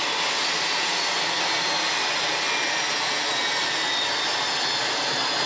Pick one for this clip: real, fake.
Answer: real